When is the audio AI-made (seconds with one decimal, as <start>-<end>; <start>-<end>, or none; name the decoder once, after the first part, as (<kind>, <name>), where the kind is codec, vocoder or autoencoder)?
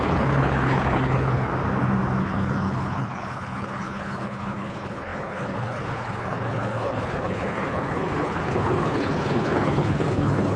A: 0.0-1.5 (codec, HILCodec); 2.2-10.6